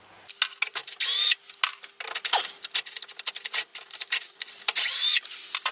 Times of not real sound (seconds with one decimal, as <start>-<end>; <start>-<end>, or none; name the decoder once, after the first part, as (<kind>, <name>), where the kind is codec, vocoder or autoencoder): 3.7-5.3 (vocoder, BigVGAN v2)

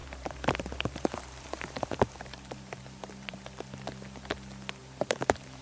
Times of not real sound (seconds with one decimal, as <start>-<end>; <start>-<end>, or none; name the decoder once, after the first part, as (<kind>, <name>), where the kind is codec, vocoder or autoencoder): 0.0-3.4 (vocoder, BigVGAN v2); 4.8-5.6

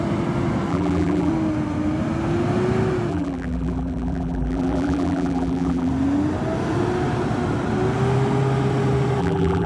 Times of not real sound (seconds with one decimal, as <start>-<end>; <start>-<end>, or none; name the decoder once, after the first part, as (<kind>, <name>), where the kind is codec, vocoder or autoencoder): 0.7-1.3 (vocoder, BigVGAN v2); 3.1-5.9; 9.2-9.7

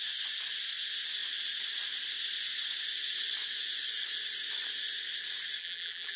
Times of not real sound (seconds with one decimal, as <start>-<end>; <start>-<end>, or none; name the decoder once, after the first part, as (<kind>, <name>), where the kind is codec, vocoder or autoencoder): 5.6-6.2 (vocoder, BigVGAN v2)

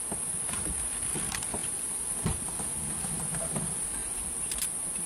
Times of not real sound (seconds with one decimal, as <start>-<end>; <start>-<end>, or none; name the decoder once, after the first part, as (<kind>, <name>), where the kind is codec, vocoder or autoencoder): 1.6-3.1 (vocoder, BigVGAN v2)

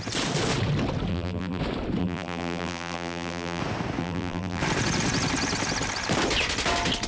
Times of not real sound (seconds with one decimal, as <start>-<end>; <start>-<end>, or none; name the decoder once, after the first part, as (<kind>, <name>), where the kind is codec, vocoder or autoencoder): 1.1-1.6 (vocoder, BigVGAN v2); 2.0-3.6; 4.0-4.6

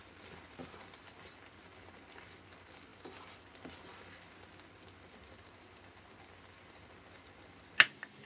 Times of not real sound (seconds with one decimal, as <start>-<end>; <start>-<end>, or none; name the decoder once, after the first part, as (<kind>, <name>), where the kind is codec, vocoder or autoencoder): none